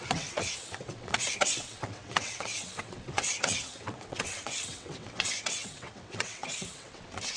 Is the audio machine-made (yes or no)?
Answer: yes